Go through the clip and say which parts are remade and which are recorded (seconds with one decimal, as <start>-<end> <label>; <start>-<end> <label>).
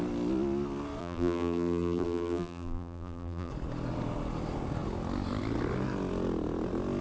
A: 0.0-1.0 recorded; 1.0-3.5 remade; 3.5-7.0 recorded